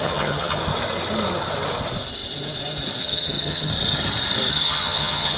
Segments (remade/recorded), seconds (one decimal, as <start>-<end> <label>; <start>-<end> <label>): 0.0-0.6 remade; 0.6-3.0 recorded; 3.0-3.7 remade; 3.7-4.5 recorded; 4.5-5.4 remade